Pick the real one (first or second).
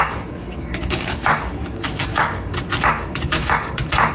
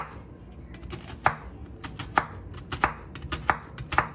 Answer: second